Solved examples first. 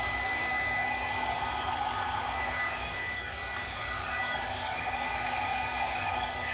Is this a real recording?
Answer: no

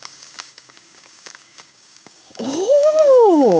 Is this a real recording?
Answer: no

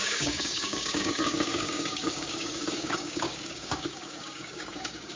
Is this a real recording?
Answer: no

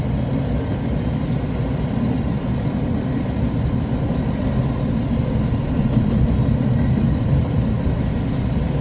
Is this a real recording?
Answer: yes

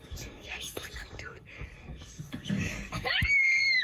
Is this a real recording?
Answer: no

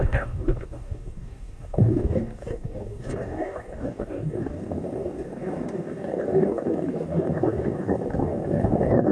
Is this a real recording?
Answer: no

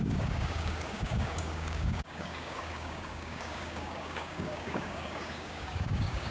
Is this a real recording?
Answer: no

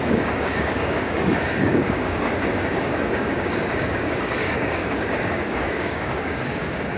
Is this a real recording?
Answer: no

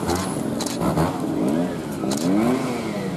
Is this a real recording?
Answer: yes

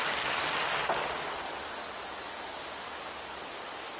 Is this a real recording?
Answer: yes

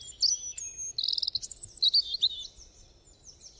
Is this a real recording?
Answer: yes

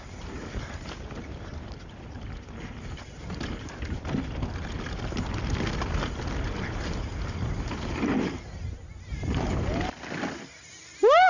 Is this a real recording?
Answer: yes